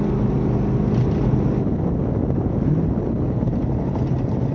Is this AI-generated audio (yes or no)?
no